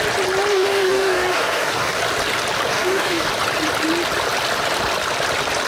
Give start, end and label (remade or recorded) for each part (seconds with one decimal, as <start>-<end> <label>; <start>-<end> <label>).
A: 0.0-0.5 recorded; 0.5-2.0 remade; 2.0-2.7 recorded; 2.7-3.3 remade; 3.3-5.7 recorded